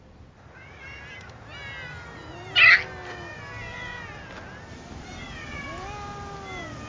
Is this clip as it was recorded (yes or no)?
yes